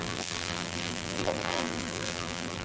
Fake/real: fake